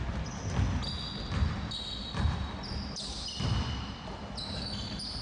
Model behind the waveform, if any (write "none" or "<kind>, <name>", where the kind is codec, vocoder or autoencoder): none